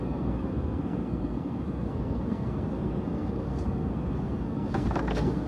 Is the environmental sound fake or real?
fake